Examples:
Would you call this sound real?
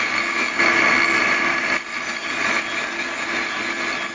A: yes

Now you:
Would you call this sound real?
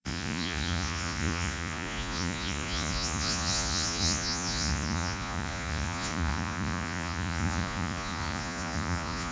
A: no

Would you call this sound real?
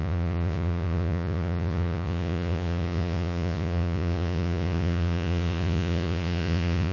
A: no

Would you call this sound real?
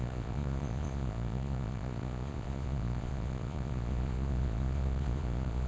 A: no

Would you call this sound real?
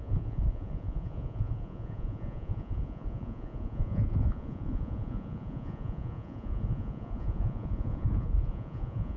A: no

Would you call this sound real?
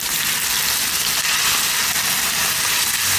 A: yes